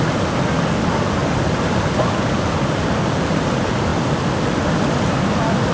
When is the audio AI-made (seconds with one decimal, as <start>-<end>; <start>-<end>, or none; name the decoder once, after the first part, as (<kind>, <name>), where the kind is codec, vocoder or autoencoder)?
none